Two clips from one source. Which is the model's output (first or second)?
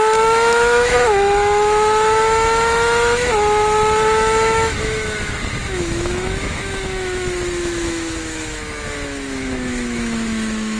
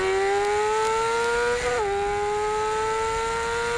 first